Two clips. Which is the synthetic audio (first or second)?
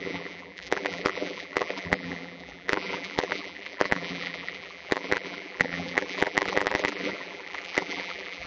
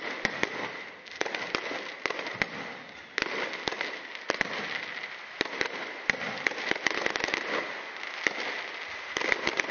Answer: first